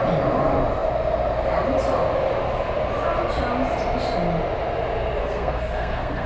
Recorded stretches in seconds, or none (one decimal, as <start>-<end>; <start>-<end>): 0.0-5.2